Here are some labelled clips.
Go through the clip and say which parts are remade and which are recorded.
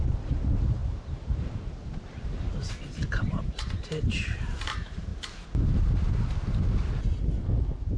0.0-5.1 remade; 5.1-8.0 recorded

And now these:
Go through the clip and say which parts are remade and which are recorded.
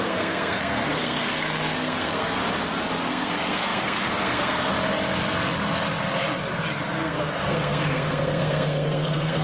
0.0-2.4 remade; 2.4-3.1 recorded; 3.1-4.7 remade; 4.7-6.8 recorded; 6.8-9.4 remade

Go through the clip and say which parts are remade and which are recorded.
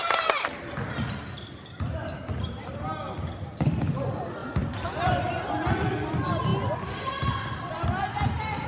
0.0-3.4 remade; 3.4-4.4 recorded; 4.4-5.5 remade; 5.5-8.7 recorded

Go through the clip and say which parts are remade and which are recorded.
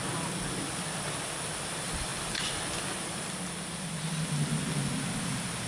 0.0-5.7 recorded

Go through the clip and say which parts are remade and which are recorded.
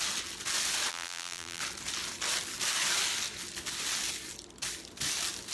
0.0-0.9 recorded; 0.9-1.6 remade; 1.6-5.5 recorded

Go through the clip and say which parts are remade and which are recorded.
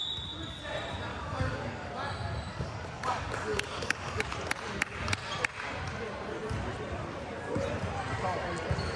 0.0-1.1 recorded; 1.1-1.9 remade; 1.9-2.5 recorded; 2.5-4.2 remade; 4.2-9.0 recorded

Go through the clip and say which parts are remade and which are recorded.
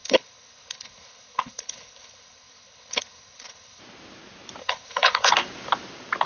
0.0-3.8 remade; 3.8-4.6 recorded; 4.6-5.3 remade; 5.3-6.3 recorded